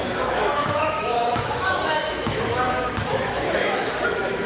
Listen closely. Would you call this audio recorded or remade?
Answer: remade